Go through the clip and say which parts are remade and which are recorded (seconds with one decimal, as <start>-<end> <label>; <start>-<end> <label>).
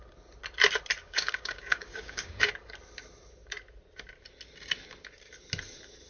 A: 0.0-1.0 recorded; 1.0-2.5 remade; 2.5-6.1 recorded